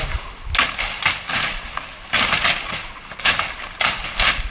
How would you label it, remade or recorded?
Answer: recorded